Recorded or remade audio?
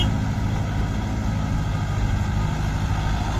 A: recorded